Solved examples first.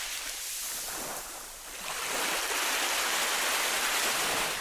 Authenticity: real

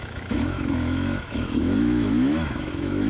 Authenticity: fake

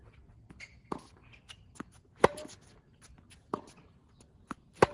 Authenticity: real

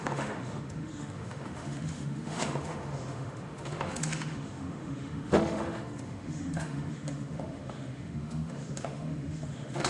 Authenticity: fake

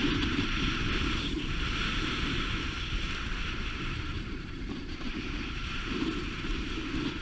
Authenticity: fake